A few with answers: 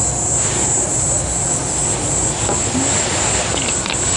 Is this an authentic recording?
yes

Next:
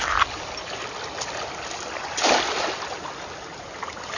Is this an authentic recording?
yes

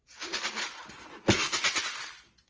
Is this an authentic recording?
yes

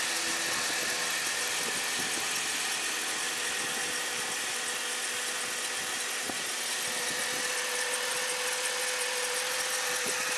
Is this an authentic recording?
yes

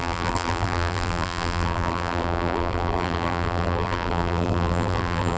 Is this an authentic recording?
no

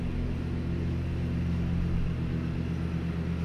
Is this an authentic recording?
yes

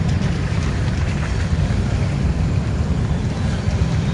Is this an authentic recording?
yes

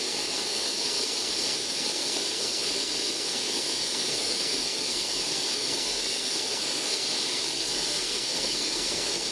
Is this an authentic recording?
no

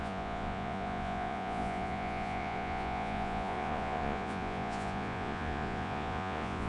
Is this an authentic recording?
no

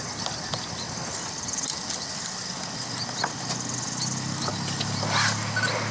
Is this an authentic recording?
yes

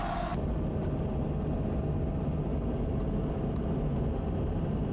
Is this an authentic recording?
yes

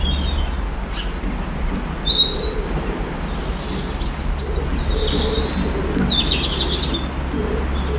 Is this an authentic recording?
yes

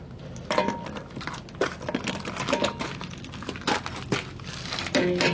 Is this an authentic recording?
yes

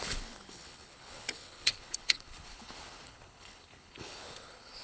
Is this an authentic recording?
no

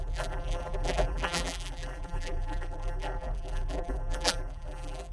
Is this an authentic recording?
no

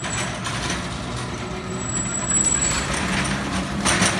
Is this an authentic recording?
yes